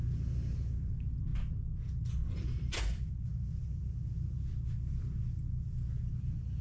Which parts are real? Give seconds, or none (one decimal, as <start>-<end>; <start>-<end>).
0.0-6.6